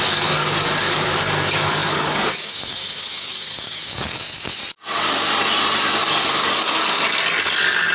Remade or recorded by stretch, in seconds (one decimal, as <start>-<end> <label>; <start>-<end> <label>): 0.0-4.6 remade; 4.6-6.0 recorded; 6.0-7.9 remade

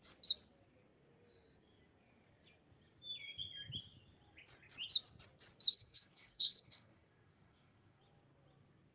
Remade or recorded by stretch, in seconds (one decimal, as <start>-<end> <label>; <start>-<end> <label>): 0.0-5.7 recorded; 5.7-8.0 remade; 8.0-8.9 recorded

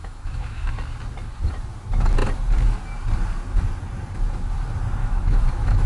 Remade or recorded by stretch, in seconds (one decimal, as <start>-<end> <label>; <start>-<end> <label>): 0.0-0.7 remade; 0.7-5.0 recorded; 5.0-5.9 remade

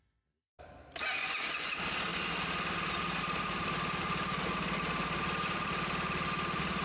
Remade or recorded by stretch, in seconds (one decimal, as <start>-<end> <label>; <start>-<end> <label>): 0.0-1.2 recorded; 1.2-1.7 remade; 1.7-6.8 recorded

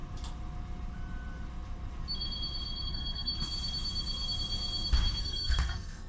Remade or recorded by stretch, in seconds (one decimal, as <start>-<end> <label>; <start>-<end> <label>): 0.0-2.9 recorded; 2.9-3.3 remade; 3.3-5.2 recorded; 5.2-6.1 remade

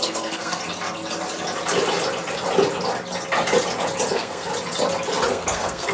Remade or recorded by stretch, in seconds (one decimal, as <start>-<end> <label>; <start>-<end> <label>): 0.0-0.6 remade; 0.6-4.1 recorded; 4.1-4.5 remade; 4.5-5.3 recorded; 5.3-5.9 remade

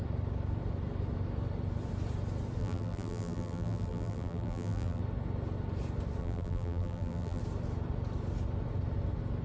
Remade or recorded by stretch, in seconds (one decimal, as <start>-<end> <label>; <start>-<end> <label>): 0.0-2.6 recorded; 2.6-5.0 remade; 5.0-6.2 recorded; 6.2-7.4 remade; 7.4-9.4 recorded

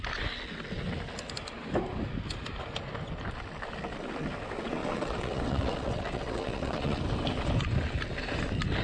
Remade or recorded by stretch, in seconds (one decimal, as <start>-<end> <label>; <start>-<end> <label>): 0.0-4.8 recorded; 4.8-7.0 remade; 7.0-8.8 recorded